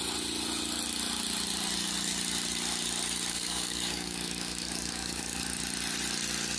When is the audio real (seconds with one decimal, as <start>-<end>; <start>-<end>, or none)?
0.0-3.3; 5.4-6.6